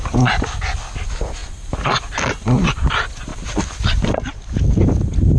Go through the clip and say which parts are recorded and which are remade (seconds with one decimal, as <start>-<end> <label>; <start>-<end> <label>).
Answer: 0.0-5.4 recorded